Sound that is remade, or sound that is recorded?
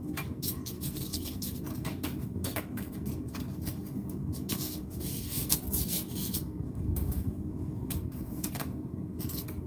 remade